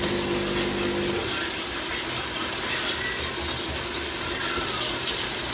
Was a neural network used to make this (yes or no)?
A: no